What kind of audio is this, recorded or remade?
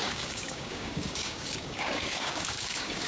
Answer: remade